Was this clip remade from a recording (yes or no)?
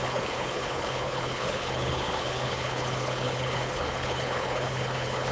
yes